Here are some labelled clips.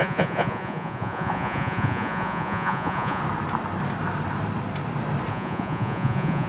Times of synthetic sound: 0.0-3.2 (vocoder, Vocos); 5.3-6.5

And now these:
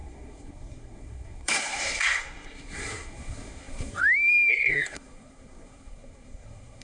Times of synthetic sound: 0.0-4.0 (codec, SNAC); 4.5-6.8

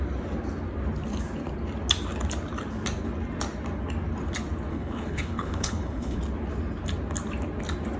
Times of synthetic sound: 4.7-6.2 (codec, HILCodec)

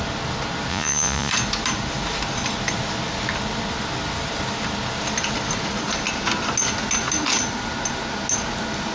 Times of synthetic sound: 0.7-1.3 (vocoder, Vocos)

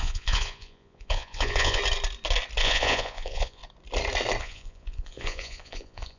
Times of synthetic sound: 0.0-1.8 (vocoder, Vocos); 2.6-3.6; 4.4-6.2

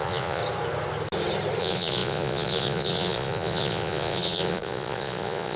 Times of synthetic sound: 0.0-0.4 (vocoder, Vocos); 1.6-5.6